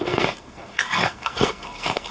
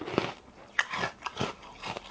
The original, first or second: second